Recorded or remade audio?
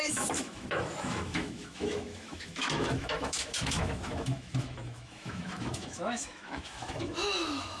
remade